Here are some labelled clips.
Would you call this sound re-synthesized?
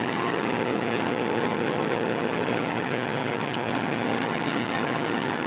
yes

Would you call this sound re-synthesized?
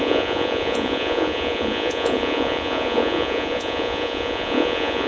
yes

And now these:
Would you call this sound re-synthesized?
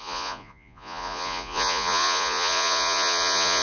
yes